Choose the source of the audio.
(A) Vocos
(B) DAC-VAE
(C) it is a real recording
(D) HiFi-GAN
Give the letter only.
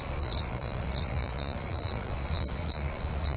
A